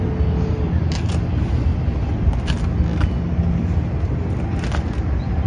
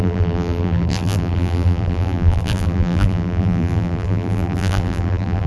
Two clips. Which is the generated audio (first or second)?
second